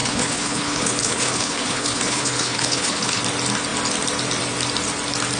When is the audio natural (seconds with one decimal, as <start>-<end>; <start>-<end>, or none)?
3.2-5.4